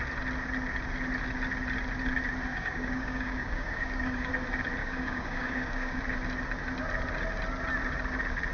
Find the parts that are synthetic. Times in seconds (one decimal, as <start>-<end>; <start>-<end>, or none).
2.5-4.3; 4.8-6.0